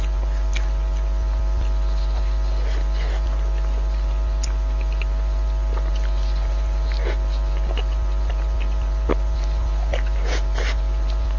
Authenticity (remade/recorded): recorded